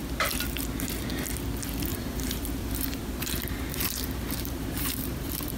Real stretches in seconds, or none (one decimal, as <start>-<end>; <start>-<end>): 0.0-1.9